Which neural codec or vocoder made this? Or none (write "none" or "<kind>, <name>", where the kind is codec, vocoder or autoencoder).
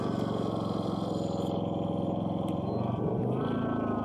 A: none